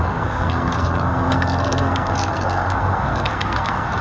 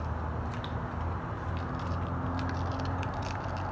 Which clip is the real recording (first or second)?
second